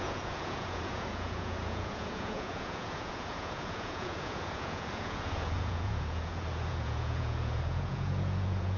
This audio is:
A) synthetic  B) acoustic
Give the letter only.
A